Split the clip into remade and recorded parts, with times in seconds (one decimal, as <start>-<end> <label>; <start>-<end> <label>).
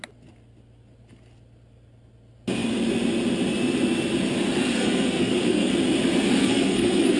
0.0-4.7 recorded; 4.7-5.7 remade; 5.7-6.4 recorded; 6.4-7.2 remade